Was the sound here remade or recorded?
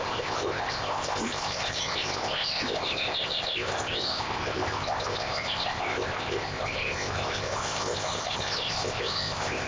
remade